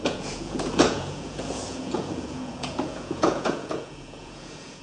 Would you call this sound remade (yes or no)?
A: yes